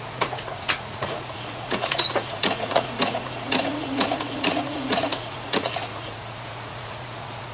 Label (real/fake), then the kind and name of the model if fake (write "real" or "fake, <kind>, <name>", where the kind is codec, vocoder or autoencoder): fake, vocoder, Vocos